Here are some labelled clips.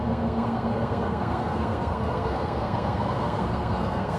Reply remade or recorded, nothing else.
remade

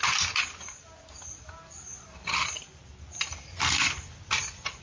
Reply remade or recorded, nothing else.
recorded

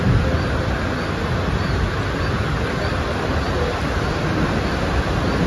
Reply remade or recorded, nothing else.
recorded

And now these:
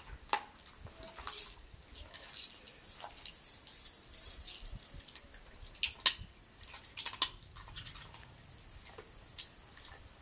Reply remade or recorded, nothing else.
recorded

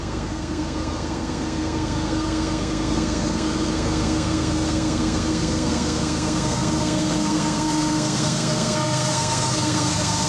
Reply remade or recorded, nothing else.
remade